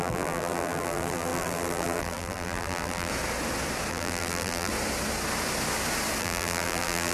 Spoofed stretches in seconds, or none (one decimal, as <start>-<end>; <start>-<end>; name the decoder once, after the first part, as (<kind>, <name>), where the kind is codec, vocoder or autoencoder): 0.0-3.1 (vocoder, BigVGAN v2); 3.9-4.7; 6.2-7.1